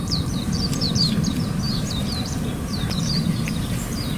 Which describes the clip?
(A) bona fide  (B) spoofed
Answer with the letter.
B